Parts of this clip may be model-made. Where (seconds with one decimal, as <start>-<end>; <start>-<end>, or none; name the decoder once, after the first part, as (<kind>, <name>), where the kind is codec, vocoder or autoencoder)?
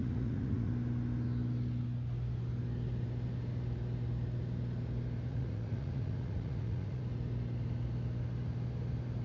0.0-0.7 (vocoder, Vocos); 5.3-7.0